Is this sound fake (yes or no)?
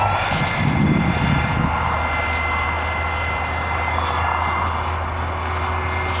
no